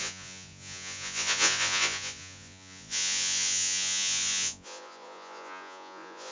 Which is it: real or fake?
fake